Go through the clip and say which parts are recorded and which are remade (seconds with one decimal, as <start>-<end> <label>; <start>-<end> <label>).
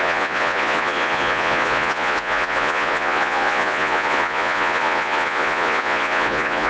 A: 0.0-6.7 remade